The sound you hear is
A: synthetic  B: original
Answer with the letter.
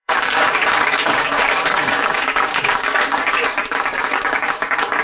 A